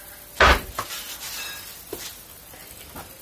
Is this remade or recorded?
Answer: recorded